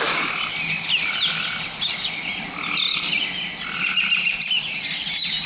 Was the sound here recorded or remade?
recorded